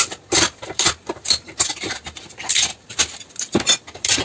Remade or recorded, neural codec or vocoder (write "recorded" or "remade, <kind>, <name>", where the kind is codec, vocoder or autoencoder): recorded